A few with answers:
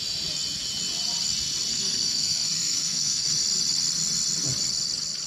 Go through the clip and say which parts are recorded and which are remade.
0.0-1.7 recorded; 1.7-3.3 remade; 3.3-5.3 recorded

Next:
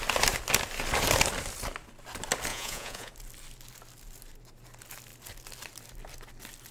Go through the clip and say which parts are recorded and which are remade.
0.0-2.5 recorded; 2.5-3.1 remade; 3.1-6.7 recorded

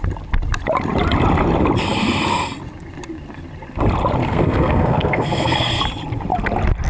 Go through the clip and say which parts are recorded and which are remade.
0.0-4.2 recorded; 4.2-5.8 remade; 5.8-6.9 recorded

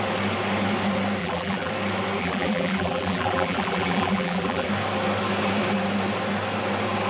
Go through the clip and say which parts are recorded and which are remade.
0.0-1.2 recorded; 1.2-1.7 remade; 1.7-2.2 recorded; 2.2-4.7 remade; 4.7-7.1 recorded

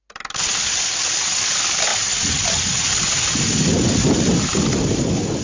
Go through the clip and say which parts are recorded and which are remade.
0.0-5.4 recorded